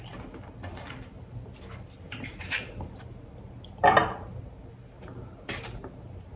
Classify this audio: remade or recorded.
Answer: recorded